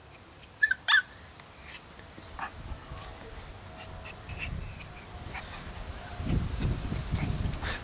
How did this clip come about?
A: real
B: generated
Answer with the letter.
A